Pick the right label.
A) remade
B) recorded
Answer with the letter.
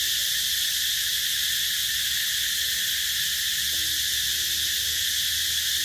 B